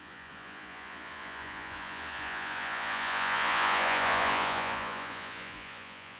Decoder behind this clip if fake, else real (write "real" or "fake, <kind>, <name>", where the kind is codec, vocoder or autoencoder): fake, vocoder, Vocos